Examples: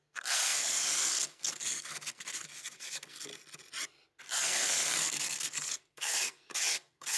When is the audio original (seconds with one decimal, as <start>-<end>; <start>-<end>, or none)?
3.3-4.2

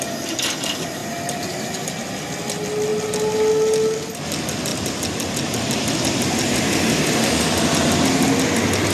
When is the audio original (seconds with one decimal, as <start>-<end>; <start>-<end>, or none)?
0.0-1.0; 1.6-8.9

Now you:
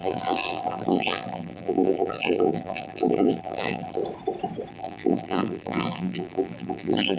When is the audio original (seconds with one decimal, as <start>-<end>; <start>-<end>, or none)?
4.0-4.7

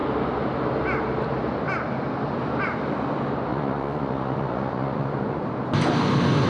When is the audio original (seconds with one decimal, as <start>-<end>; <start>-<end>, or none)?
0.0-3.5; 5.4-6.5

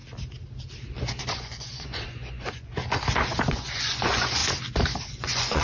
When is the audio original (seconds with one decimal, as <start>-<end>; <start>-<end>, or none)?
0.0-1.0; 2.8-3.5; 4.4-5.1